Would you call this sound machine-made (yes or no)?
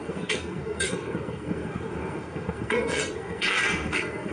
yes